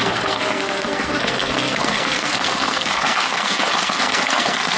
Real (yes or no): no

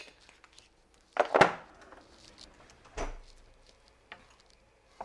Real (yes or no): yes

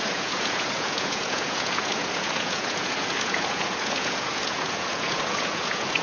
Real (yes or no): no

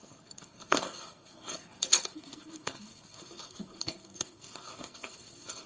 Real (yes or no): no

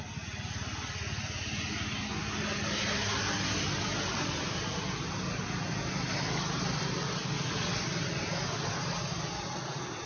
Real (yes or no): yes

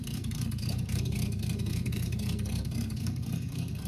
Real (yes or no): no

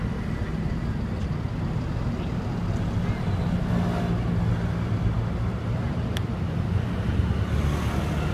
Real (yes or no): yes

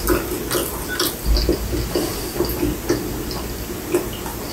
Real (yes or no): yes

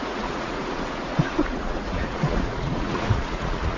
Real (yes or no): no